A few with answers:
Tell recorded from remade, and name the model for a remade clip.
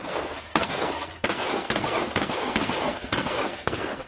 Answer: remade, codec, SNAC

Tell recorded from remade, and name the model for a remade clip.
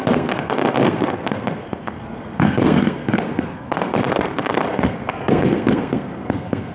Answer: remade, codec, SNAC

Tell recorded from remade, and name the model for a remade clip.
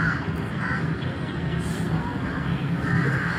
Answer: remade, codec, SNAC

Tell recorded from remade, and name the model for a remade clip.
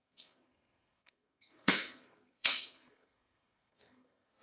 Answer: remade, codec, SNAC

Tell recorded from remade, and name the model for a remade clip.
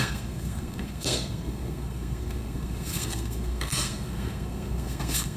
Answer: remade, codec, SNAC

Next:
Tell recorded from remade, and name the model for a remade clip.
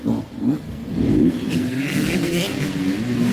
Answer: remade, codec, SNAC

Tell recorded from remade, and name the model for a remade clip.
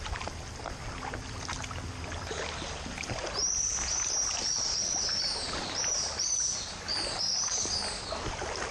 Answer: recorded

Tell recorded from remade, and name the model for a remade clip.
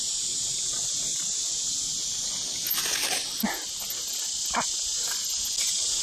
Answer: recorded